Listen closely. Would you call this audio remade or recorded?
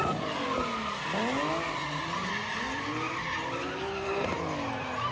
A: recorded